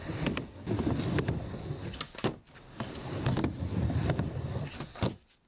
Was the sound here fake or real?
real